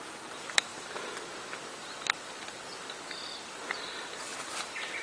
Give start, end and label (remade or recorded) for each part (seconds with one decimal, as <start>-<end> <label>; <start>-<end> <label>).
0.0-0.7 remade; 0.7-3.5 recorded; 3.5-4.3 remade; 4.3-5.0 recorded